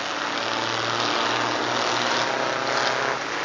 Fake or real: real